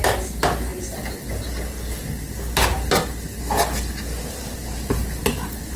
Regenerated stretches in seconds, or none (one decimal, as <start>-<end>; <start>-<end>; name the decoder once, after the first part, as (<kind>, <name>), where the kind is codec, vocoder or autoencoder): none